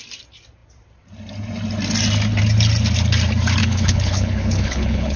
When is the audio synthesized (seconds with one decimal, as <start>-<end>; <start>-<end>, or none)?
3.6-5.2